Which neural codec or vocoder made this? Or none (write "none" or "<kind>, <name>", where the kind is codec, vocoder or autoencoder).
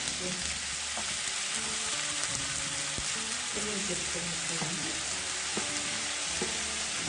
none